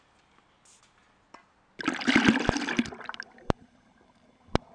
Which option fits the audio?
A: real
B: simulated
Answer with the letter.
A